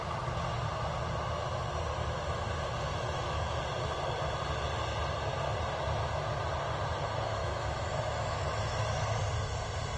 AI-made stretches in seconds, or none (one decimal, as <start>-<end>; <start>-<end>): 2.9-3.6; 7.4-9.0